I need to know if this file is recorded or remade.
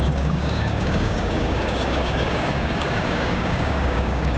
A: remade